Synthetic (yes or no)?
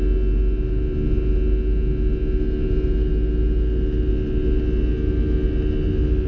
no